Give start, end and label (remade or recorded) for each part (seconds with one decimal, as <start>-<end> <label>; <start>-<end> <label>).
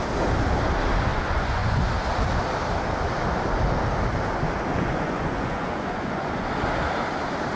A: 0.0-1.1 recorded; 1.1-1.9 remade; 1.9-4.7 recorded; 4.7-6.5 remade; 6.5-7.6 recorded